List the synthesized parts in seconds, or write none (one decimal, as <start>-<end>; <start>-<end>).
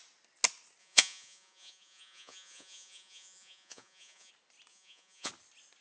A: 0.8-4.3; 4.7-5.3